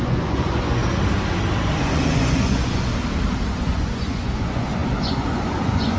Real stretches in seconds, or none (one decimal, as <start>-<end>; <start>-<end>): 0.8-1.8; 2.9-3.5